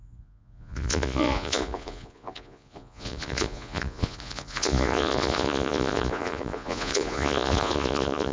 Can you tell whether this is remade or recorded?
remade